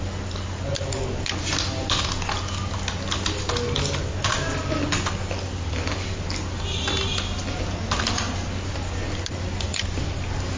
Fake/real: real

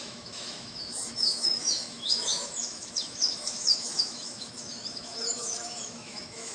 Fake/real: fake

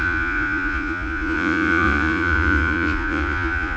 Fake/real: fake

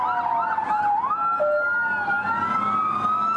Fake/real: real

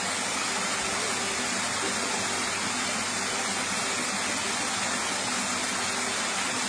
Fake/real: real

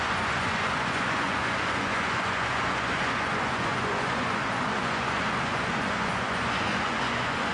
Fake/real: fake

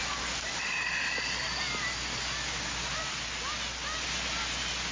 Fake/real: real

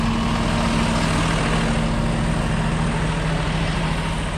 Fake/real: real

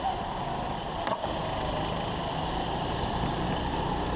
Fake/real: real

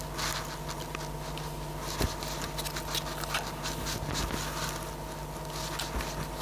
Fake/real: real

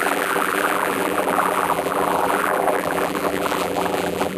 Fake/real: fake